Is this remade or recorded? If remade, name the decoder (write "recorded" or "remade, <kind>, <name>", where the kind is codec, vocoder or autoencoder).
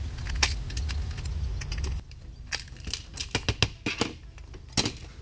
recorded